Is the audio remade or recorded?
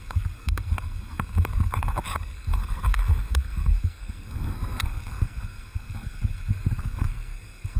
remade